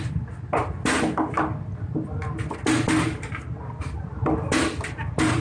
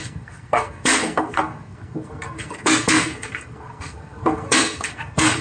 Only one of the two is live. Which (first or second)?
first